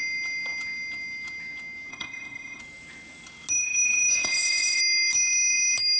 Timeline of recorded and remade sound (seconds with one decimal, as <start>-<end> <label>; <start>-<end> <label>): 0.0-1.9 recorded; 1.9-2.6 remade; 2.6-4.1 recorded; 4.1-4.8 remade; 4.8-6.0 recorded